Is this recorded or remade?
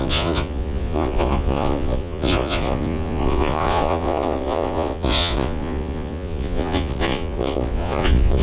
remade